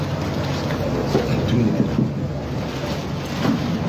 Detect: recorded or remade recorded